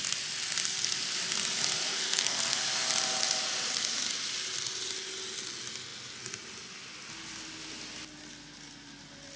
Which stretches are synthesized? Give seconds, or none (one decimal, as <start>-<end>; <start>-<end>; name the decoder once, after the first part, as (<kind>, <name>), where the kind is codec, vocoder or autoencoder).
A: 1.9-2.6 (codec, SNAC)